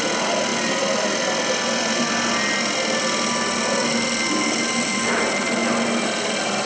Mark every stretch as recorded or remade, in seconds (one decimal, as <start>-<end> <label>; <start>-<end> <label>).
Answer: 0.0-6.7 recorded